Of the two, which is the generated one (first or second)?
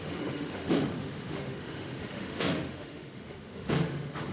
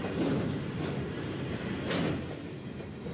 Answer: first